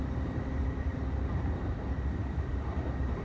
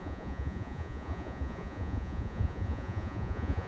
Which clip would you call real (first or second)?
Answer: first